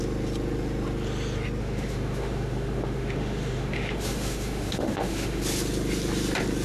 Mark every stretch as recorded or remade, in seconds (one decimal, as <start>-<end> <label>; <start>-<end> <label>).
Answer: 0.0-1.6 recorded; 1.6-5.4 remade; 5.4-6.6 recorded